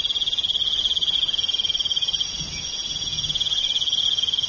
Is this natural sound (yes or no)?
yes